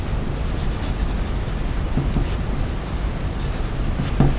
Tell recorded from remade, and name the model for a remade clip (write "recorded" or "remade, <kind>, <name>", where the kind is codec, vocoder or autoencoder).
recorded